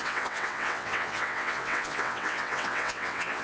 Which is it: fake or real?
fake